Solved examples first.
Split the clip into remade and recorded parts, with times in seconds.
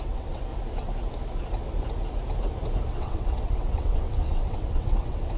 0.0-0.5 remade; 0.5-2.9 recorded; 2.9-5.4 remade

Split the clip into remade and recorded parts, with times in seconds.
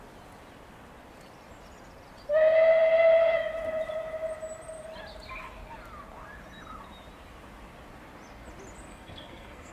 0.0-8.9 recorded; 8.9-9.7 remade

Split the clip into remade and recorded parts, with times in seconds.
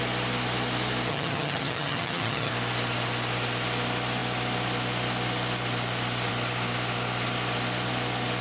0.0-1.1 recorded; 1.1-2.5 remade; 2.5-8.4 recorded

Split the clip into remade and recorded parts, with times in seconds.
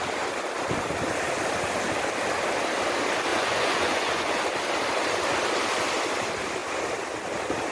0.0-3.3 recorded; 3.3-4.4 remade; 4.4-7.7 recorded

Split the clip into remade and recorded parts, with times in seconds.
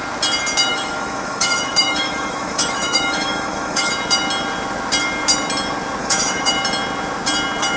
0.0-0.7 recorded; 0.7-3.9 remade; 3.9-6.0 recorded; 6.0-6.5 remade; 6.5-7.8 recorded